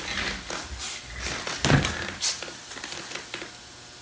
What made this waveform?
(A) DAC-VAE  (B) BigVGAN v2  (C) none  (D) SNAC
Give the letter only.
C